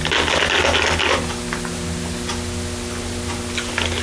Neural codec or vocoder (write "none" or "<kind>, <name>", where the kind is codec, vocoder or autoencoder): none